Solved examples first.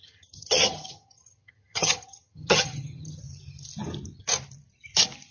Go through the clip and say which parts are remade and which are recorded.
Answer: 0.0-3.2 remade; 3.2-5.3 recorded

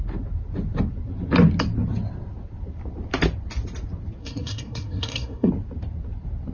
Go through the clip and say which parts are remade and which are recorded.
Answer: 0.0-4.2 recorded; 4.2-5.5 remade; 5.5-6.5 recorded

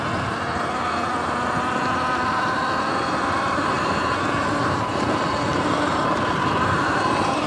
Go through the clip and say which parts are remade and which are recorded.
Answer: 0.0-5.5 recorded; 5.5-6.3 remade; 6.3-7.5 recorded

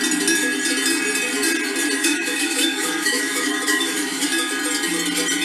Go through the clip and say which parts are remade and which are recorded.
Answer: 0.0-2.0 recorded; 2.0-4.2 remade; 4.2-5.4 recorded

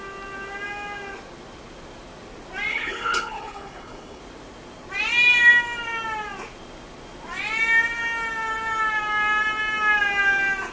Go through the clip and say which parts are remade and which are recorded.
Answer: 0.0-2.7 recorded; 2.7-4.2 remade; 4.2-10.7 recorded

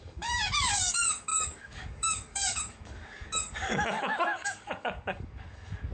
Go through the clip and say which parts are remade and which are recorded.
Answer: 0.0-5.9 remade